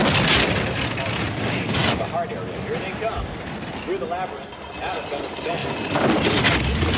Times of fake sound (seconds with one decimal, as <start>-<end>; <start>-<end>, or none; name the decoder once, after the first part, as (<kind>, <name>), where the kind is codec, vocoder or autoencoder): none